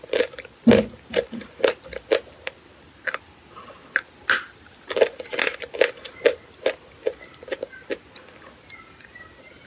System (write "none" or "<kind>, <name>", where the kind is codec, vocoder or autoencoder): none